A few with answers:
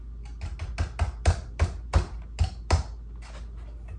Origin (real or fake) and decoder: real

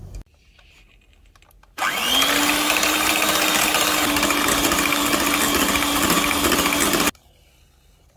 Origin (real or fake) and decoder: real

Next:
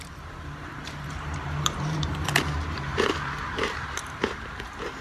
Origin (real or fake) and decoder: fake, vocoder, BigVGAN v2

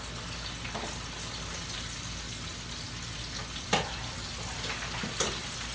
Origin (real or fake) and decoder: real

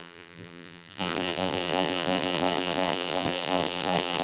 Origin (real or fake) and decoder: fake, vocoder, BigVGAN v2